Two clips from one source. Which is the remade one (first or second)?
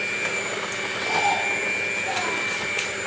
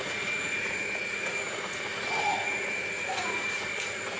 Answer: second